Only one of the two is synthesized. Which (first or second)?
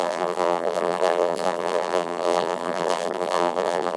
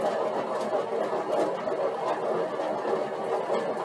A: first